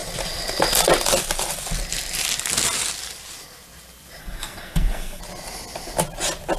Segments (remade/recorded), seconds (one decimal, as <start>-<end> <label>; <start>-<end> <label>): 0.0-4.2 recorded; 4.2-5.2 remade; 5.2-6.6 recorded

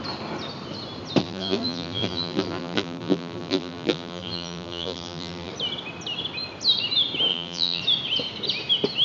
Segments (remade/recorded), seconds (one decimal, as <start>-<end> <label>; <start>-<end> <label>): 0.0-1.2 recorded; 1.2-5.5 remade; 5.5-7.3 recorded; 7.3-7.8 remade; 7.8-9.0 recorded

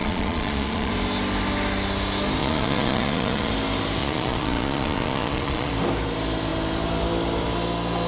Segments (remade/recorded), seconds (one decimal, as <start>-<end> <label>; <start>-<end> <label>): 0.0-0.9 remade; 0.9-2.4 recorded; 2.4-3.5 remade; 3.5-4.0 recorded; 4.0-5.7 remade; 5.7-8.1 recorded